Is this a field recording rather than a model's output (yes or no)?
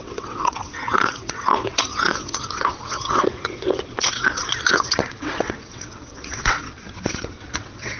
no